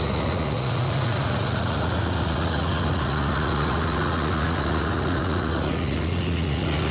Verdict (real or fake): fake